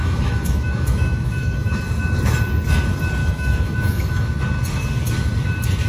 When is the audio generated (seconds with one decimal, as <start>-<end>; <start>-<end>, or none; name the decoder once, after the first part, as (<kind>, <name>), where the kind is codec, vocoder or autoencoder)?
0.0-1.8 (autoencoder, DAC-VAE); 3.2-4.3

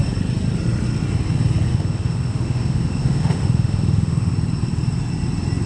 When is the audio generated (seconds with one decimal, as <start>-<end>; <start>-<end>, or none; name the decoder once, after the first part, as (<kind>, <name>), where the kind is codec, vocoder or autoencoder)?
1.7-4.3 (autoencoder, DAC-VAE)

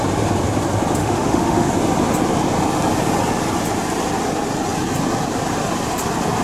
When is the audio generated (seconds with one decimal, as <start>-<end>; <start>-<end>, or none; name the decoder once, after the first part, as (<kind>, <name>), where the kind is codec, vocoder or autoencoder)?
1.0-1.7 (autoencoder, DAC-VAE)